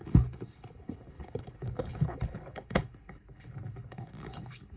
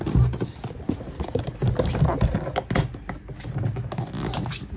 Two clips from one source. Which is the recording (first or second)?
second